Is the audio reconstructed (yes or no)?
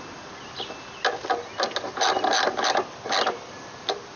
no